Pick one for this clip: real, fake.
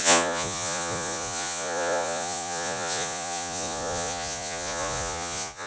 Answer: fake